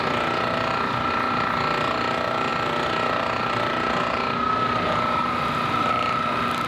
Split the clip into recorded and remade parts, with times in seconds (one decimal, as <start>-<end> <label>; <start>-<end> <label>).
0.0-6.7 recorded